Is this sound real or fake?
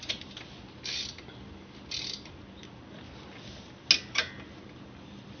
real